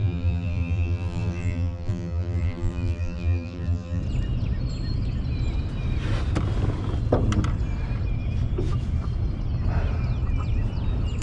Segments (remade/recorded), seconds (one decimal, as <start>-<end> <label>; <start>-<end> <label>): 0.0-4.0 remade; 4.0-11.2 recorded

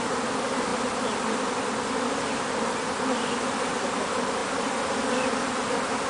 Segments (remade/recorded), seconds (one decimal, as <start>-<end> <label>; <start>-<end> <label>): 0.0-4.4 recorded; 4.4-4.9 remade; 4.9-6.1 recorded

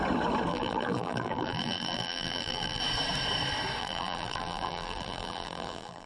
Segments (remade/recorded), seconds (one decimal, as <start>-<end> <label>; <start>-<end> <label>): 0.0-0.5 recorded; 0.5-2.8 remade; 2.8-3.8 recorded; 3.8-6.1 remade

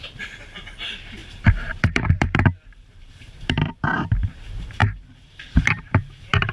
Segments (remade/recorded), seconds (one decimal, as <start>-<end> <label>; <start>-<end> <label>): 0.0-6.5 remade